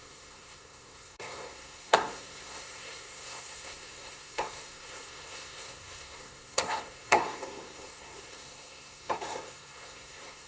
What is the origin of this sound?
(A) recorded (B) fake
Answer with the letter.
B